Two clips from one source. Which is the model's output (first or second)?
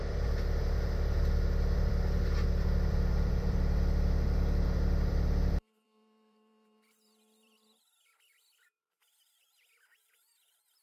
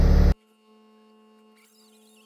first